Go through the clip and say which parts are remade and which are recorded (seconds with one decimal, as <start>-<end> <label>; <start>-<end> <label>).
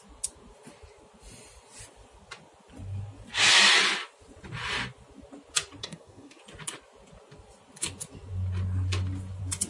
0.0-5.8 recorded; 5.8-6.4 remade; 6.4-9.7 recorded